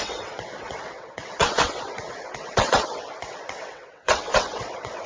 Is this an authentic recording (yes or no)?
no